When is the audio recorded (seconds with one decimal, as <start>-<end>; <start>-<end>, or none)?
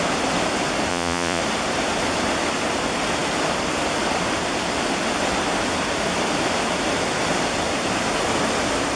0.0-0.9; 1.4-9.0